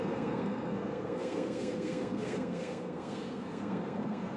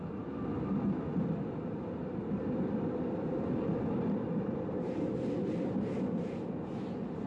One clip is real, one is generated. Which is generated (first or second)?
first